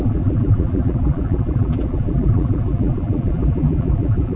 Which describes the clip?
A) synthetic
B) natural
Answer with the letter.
A